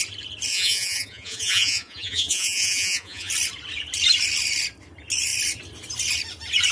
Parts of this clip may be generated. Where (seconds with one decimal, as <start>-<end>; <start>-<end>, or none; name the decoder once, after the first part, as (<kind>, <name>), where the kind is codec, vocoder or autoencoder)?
0.5-3.3 (vocoder, Vocos)